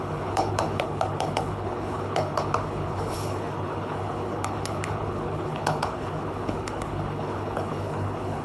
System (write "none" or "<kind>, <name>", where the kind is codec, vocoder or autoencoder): codec, HILCodec